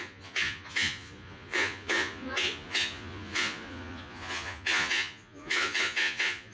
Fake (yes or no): yes